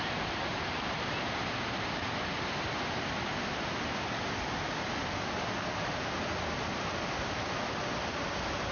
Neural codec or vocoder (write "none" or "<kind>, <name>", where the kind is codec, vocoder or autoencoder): none